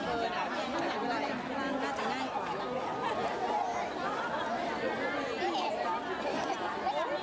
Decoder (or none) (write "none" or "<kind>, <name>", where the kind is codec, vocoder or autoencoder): none